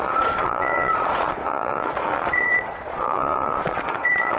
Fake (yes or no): yes